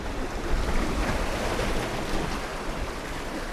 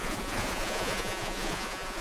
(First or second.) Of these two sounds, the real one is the first